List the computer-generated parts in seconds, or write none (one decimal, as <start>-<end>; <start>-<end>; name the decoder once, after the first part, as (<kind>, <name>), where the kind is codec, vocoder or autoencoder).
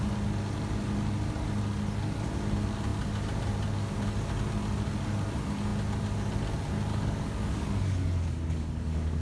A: 6.9-9.2 (codec, DAC)